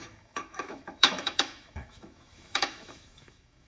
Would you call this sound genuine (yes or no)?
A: no